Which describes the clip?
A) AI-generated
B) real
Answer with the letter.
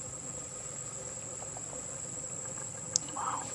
B